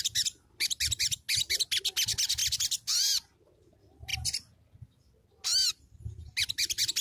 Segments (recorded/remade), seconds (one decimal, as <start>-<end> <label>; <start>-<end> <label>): 0.0-7.0 recorded